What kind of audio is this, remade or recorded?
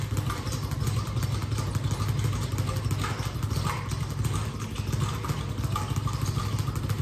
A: recorded